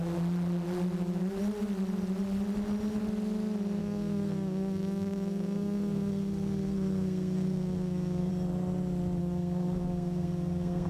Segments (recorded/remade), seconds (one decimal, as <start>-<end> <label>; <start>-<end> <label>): 0.0-3.8 recorded; 3.8-8.3 remade; 8.3-9.2 recorded; 9.2-10.9 remade